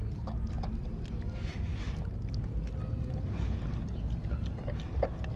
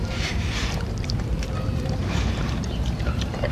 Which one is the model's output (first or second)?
second